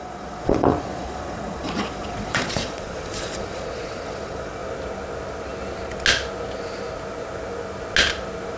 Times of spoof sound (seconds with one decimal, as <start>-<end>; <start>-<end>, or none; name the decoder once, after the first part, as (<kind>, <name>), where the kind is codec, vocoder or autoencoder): 0.0-4.6 (vocoder, Vocos)